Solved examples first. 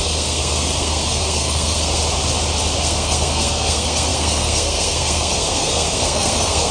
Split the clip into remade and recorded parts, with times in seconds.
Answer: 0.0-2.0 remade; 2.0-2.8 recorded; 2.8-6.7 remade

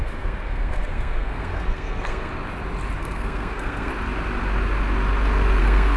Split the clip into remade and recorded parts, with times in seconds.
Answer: 0.0-2.3 remade; 2.3-3.0 recorded; 3.0-3.9 remade; 3.9-5.6 recorded; 5.6-6.0 remade

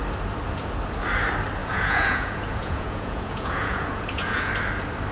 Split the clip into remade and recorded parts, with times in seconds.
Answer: 0.0-1.6 recorded; 1.6-4.5 remade; 4.5-5.1 recorded

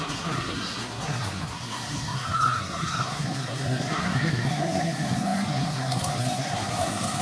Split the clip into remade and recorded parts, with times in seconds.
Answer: 0.0-7.2 remade

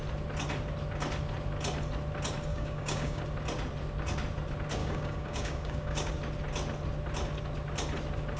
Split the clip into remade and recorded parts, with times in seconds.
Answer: 0.0-2.5 recorded; 2.5-3.2 remade; 3.2-4.8 recorded; 4.8-6.1 remade; 6.1-8.4 recorded

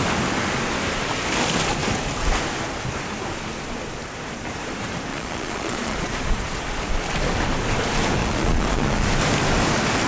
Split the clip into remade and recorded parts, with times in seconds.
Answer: 0.0-5.1 recorded; 5.1-6.9 remade; 6.9-8.2 recorded; 8.2-9.1 remade; 9.1-10.1 recorded

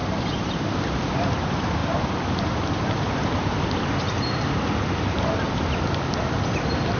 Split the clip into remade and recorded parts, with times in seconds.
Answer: 0.0-7.0 recorded